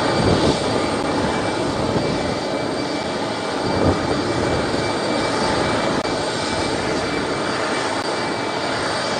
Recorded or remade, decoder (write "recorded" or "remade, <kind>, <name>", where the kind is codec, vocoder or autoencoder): recorded